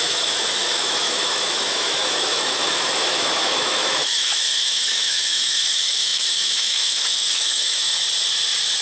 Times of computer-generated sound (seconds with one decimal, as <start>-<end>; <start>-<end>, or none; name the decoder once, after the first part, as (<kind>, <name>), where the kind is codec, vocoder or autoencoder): 0.0-7.9 (autoencoder, DAC-VAE)